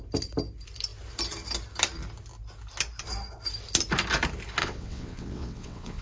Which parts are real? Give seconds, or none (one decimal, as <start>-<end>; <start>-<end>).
0.0-4.6